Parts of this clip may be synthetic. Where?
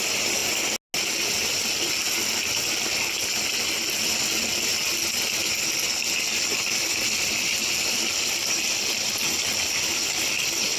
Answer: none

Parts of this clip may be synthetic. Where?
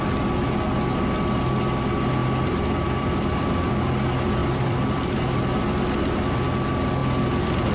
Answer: 2.2-3.8; 4.4-5.2; 7.0-7.7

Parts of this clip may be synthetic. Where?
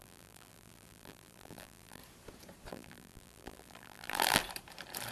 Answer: 0.0-2.0; 2.7-4.4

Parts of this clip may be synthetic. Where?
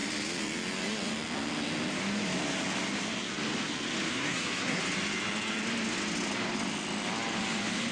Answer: 4.1-4.8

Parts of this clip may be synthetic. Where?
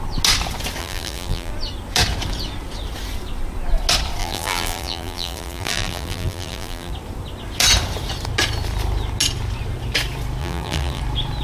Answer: 0.8-1.5; 4.2-6.9; 10.4-11.0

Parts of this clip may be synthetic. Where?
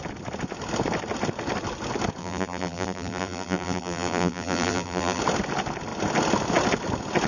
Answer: 2.2-5.2